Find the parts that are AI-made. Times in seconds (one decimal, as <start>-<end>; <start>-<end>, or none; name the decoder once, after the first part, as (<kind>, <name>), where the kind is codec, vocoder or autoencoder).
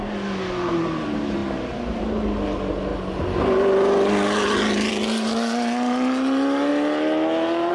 none